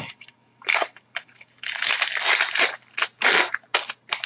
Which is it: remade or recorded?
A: recorded